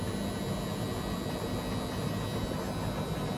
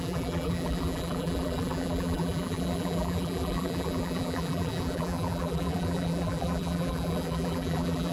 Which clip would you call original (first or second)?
first